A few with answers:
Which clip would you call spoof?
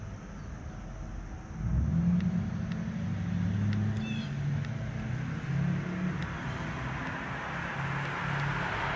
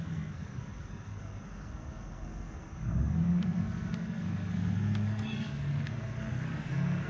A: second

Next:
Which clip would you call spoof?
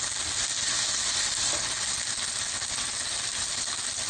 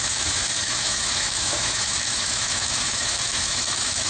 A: second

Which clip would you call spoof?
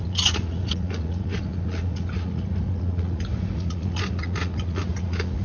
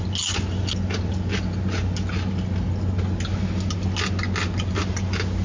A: first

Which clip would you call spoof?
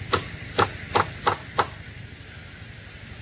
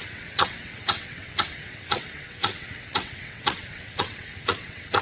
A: second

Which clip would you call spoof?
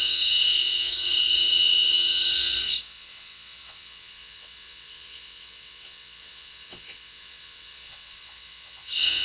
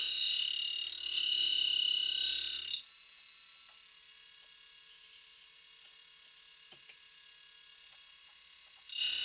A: first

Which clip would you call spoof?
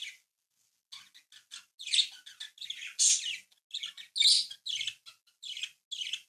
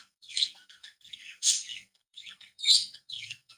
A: second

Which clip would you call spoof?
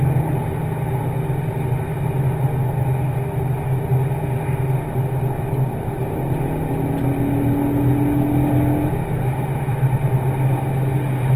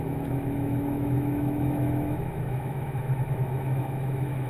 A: second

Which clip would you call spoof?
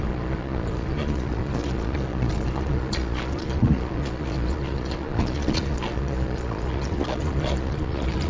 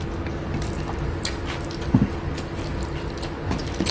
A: first